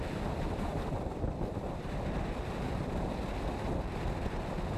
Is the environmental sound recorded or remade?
remade